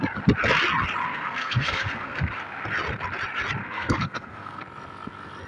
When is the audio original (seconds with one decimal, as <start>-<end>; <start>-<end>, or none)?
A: 0.0-1.1; 2.3-3.6; 4.6-5.5